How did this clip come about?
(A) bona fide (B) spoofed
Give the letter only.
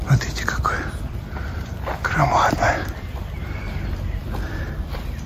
B